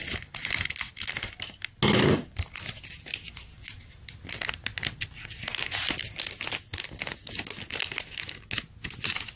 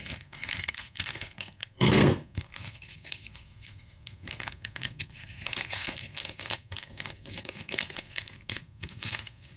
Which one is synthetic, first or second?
second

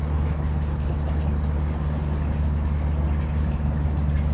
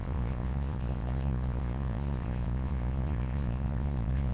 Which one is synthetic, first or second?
second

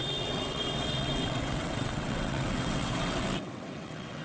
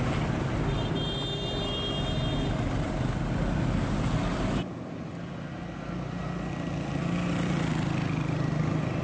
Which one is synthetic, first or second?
first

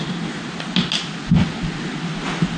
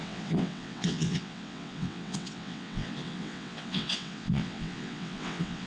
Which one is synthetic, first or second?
second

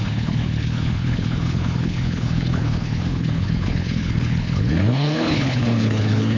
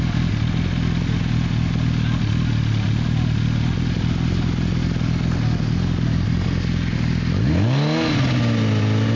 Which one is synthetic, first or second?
first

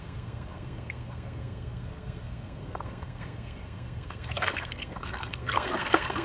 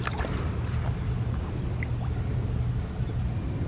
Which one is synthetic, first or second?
first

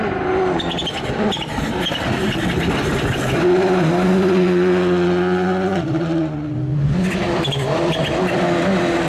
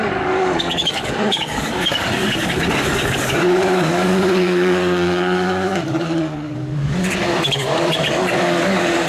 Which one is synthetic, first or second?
second